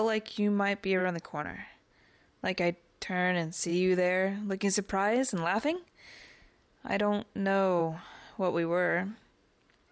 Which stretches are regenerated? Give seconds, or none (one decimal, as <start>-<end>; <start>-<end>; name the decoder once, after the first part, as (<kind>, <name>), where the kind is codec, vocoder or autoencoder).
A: 1.0-1.9 (codec, DAC)